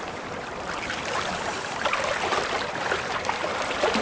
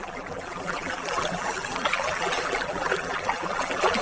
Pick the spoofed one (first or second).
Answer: second